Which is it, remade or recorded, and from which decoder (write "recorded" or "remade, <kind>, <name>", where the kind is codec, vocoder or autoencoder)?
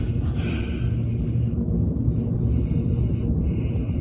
recorded